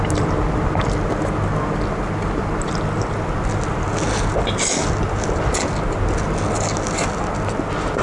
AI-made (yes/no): no